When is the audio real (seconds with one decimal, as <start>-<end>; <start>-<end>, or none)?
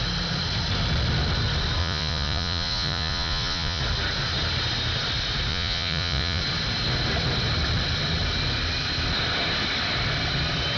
0.0-1.8; 3.8-5.5; 6.4-10.8